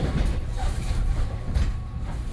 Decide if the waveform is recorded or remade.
remade